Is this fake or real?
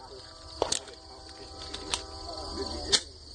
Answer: real